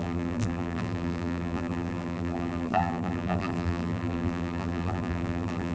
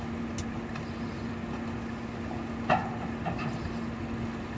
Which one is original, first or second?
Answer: second